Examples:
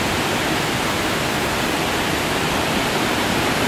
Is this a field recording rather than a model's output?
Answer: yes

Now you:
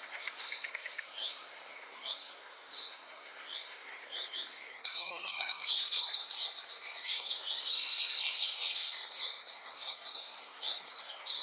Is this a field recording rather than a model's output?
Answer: no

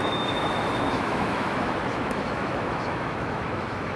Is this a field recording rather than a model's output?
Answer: no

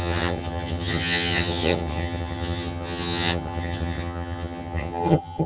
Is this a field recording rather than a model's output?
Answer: no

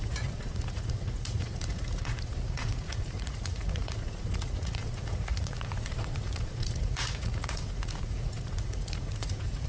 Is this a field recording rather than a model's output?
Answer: no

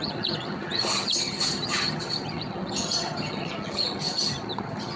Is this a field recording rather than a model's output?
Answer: no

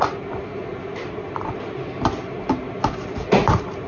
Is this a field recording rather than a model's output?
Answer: yes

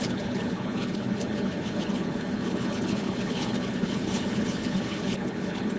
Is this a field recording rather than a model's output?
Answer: no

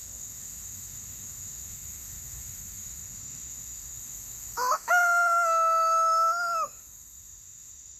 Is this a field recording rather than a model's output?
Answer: no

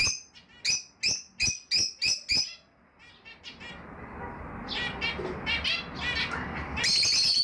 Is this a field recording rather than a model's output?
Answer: yes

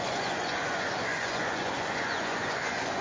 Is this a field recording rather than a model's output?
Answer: no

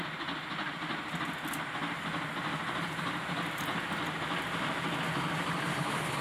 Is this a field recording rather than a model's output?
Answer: yes